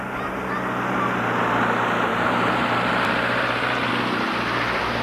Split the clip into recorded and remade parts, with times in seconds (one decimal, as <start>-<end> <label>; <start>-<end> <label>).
0.0-2.1 recorded; 2.1-3.9 remade; 3.9-5.0 recorded